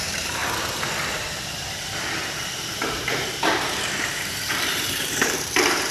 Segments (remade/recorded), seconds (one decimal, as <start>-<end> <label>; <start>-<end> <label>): 0.0-0.4 remade; 0.4-3.9 recorded; 3.9-5.9 remade